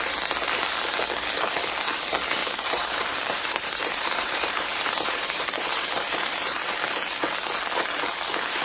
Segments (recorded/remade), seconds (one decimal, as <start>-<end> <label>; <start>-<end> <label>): 0.0-2.4 recorded; 2.4-6.7 remade; 6.7-8.6 recorded